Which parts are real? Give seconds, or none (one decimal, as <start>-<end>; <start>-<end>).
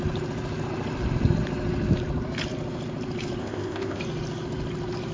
0.0-3.4; 4.0-5.1